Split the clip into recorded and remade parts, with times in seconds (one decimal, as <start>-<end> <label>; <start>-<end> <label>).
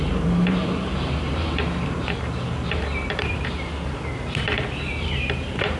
0.0-3.7 remade; 3.7-5.0 recorded; 5.0-5.8 remade